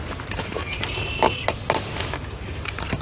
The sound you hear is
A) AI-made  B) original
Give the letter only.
B